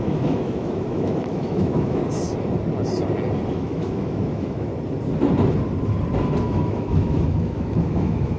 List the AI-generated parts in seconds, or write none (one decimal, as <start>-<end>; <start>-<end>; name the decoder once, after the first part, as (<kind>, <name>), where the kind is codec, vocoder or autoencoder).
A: 0.0-2.0 (autoencoder, DAC-VAE); 3.5-4.7; 6.4-8.4